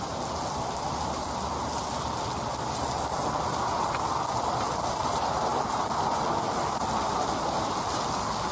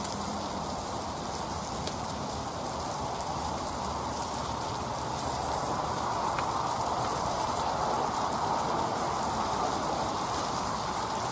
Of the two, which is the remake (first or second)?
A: second